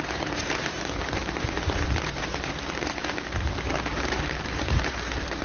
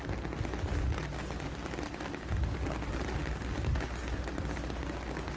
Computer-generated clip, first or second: first